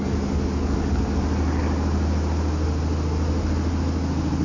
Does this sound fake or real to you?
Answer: real